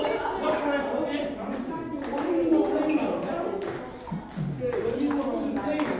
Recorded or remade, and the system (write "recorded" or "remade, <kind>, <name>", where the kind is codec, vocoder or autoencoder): recorded